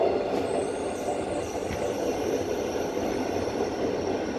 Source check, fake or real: real